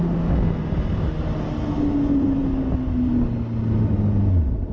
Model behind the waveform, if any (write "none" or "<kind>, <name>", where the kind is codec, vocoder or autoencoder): none